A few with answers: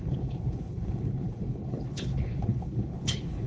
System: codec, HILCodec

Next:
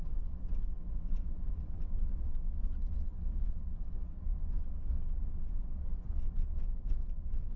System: vocoder, WaveNeXt